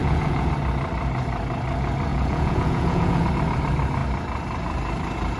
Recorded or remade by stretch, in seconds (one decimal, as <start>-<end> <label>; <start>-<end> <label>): 0.0-0.5 remade; 0.5-2.1 recorded; 2.1-3.3 remade; 3.3-5.4 recorded